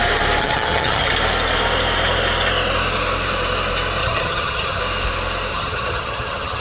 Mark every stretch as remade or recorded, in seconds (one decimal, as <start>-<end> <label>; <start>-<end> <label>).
0.0-0.4 recorded; 0.4-1.1 remade; 1.1-4.0 recorded; 4.0-4.8 remade; 4.8-5.5 recorded; 5.5-6.6 remade